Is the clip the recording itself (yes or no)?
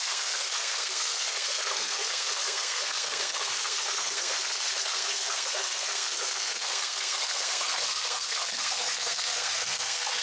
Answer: no